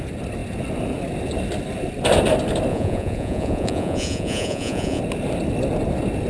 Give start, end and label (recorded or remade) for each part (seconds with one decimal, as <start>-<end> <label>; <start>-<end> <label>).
0.0-2.7 recorded; 2.7-5.0 remade; 5.0-6.3 recorded

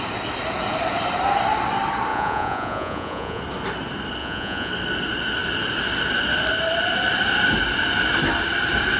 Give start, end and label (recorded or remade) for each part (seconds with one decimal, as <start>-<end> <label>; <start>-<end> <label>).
0.0-2.1 recorded; 2.1-3.4 remade; 3.4-4.2 recorded; 4.2-4.7 remade; 4.7-9.0 recorded

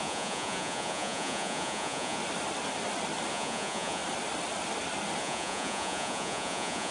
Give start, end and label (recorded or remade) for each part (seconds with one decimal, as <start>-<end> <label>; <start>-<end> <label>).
0.0-2.2 remade; 2.2-3.3 recorded; 3.3-4.0 remade; 4.0-5.2 recorded; 5.2-6.9 remade